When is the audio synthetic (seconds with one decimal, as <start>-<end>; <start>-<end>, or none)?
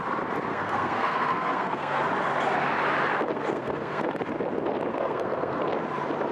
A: 0.5-2.0; 3.1-4.2; 4.9-5.6